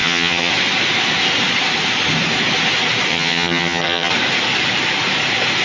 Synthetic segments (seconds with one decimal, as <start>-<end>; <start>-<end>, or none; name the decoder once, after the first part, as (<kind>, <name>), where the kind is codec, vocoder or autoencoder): 0.0-0.5 (vocoder, HiFi-GAN); 3.1-4.1